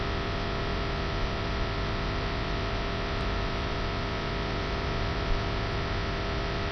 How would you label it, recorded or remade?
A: recorded